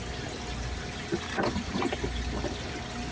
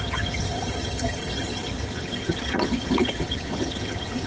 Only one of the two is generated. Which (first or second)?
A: second